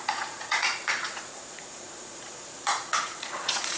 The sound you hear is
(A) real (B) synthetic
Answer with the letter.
B